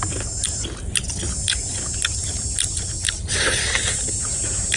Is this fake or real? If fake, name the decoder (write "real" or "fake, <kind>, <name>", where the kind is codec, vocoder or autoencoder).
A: real